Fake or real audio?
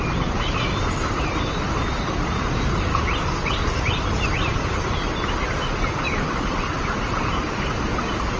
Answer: real